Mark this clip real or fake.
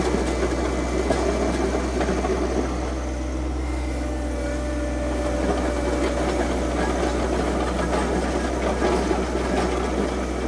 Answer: real